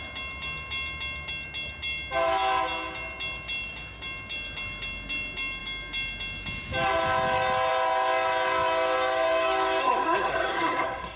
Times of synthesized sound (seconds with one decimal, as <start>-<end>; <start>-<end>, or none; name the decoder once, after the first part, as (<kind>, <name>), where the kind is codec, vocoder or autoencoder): 9.8-11.2 (codec, SNAC)